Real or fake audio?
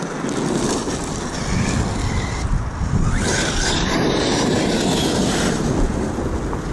real